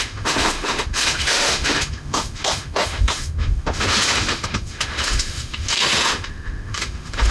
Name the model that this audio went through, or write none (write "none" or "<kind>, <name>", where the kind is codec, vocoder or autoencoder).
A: autoencoder, DAC-VAE